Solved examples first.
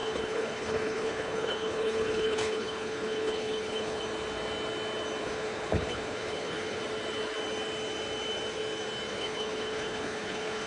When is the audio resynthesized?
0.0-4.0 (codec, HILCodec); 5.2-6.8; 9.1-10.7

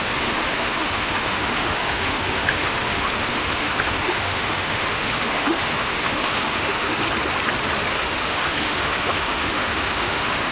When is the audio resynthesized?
0.0-7.0 (autoencoder, DAC-VAE); 7.9-10.5

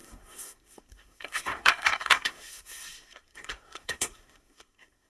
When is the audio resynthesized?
0.0-5.1 (codec, SNAC)

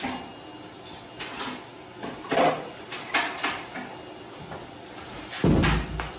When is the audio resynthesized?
none

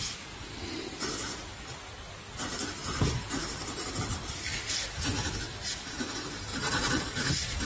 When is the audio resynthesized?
2.8-4.3 (vocoder, BigVGAN v2); 6.5-7.6